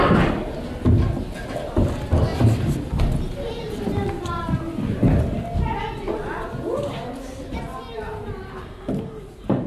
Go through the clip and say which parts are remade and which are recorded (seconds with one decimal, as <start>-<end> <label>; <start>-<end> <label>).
0.0-9.7 recorded